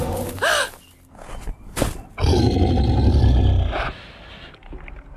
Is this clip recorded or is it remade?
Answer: recorded